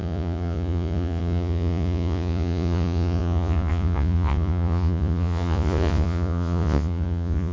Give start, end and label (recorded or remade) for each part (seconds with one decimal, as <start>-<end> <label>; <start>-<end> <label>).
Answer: 0.0-7.5 remade